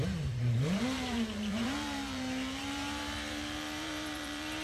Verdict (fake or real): fake